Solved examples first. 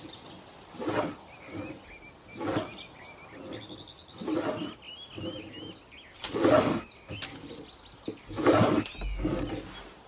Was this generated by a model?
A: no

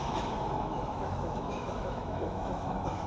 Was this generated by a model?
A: yes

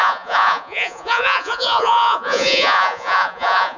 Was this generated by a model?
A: yes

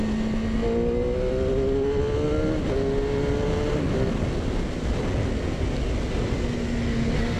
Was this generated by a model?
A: no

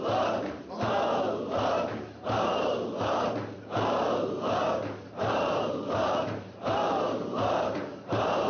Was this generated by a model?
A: yes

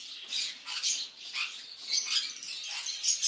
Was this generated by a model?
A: no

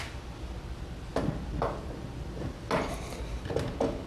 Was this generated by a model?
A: no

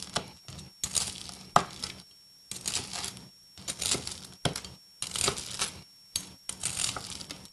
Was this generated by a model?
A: no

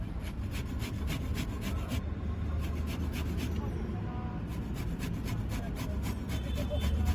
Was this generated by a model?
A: no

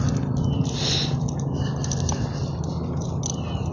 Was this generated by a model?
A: no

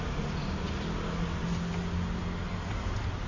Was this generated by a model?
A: no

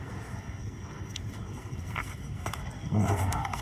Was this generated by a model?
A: yes